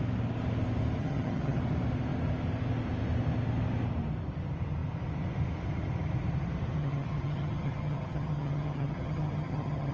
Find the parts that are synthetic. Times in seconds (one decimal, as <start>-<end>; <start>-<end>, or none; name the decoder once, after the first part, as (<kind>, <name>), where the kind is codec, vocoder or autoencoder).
1.0-1.6 (vocoder, HiFi-GAN); 6.8-9.9

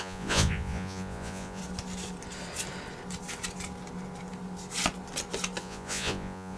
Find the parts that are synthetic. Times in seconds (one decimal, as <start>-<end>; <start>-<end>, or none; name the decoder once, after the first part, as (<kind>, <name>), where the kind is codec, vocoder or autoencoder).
0.0-1.6 (vocoder, Vocos); 5.6-6.6

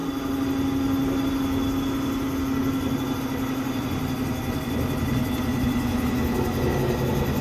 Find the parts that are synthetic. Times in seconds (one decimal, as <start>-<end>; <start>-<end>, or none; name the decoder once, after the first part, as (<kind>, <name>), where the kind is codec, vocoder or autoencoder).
none

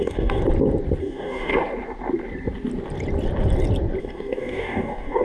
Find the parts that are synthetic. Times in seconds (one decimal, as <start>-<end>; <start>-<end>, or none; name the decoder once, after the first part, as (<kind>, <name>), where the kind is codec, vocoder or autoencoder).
0.0-0.4 (codec, DAC); 1.0-1.5; 4.0-5.2